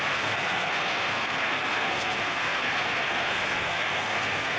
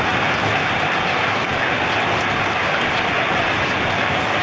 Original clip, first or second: second